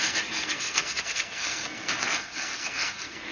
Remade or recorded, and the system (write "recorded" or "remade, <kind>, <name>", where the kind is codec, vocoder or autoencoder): remade, codec, SNAC